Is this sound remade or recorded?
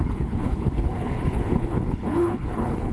remade